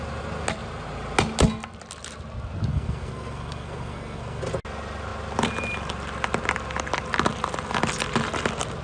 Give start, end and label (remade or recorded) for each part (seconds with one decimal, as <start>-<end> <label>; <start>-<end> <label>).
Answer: 0.0-2.7 recorded; 2.7-4.4 remade; 4.4-8.8 recorded